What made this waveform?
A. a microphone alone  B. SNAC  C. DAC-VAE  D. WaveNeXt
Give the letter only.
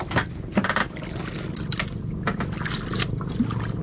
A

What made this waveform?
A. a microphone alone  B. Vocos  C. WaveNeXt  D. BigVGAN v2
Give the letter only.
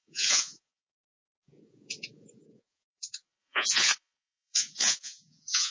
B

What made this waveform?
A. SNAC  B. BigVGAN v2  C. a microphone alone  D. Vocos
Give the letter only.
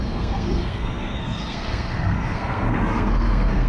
A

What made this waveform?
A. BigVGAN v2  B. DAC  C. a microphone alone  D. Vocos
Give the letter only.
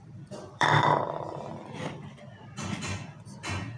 A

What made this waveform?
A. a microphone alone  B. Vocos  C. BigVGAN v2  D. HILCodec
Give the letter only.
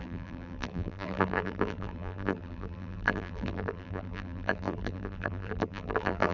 C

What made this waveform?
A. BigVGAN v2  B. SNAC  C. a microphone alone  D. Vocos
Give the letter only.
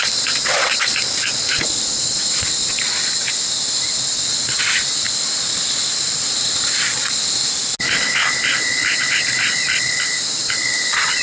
C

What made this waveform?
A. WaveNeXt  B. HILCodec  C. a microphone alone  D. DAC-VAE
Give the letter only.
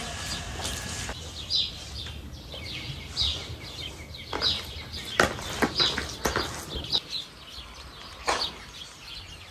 C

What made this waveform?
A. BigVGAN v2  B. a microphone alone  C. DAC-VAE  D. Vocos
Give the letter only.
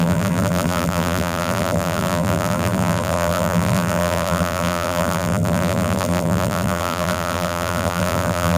A